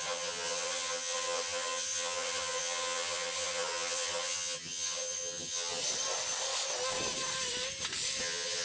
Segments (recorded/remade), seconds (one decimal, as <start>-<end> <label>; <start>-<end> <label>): 0.0-5.8 remade; 5.8-8.2 recorded; 8.2-8.6 remade